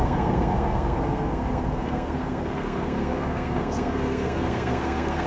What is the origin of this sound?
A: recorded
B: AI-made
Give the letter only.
B